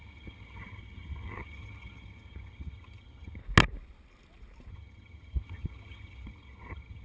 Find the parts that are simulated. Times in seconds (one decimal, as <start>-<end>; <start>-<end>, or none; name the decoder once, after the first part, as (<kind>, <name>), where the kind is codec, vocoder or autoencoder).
0.0-3.4 (vocoder, HiFi-GAN); 4.7-7.0